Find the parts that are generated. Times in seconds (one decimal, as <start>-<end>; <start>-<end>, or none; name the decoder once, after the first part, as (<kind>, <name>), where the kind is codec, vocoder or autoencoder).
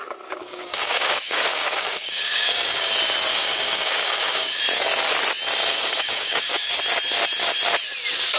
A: 0.4-2.9 (codec, DAC); 3.3-4.6; 5.7-6.7